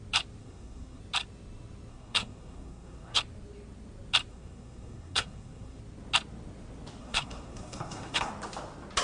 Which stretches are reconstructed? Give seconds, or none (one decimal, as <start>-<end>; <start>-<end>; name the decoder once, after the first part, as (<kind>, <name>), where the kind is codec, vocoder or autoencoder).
0.4-1.0 (codec, SNAC); 1.9-3.2; 4.3-5.8; 7.0-8.3